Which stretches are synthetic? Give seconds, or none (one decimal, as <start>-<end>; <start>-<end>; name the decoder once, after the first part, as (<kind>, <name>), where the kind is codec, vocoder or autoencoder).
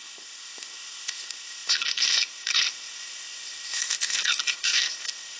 0.0-5.4 (codec, ZipCodec)